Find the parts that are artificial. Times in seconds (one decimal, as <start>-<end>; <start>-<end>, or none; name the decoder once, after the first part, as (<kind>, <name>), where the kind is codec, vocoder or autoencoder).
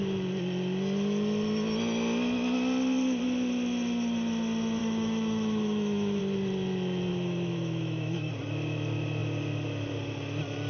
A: 4.8-6.2 (autoencoder, DAC-VAE); 7.1-8.3